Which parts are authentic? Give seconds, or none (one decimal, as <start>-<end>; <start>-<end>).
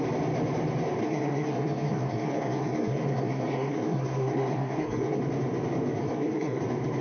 0.0-1.0; 5.2-6.0; 6.6-7.0